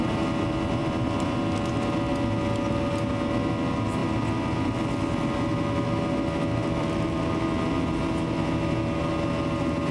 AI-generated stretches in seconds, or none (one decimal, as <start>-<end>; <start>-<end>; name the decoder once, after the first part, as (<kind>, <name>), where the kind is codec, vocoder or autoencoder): 0.8-1.4 (vocoder, BigVGAN v2)